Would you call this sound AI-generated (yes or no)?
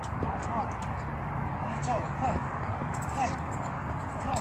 yes